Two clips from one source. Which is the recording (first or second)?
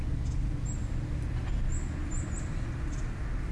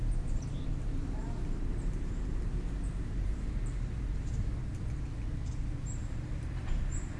first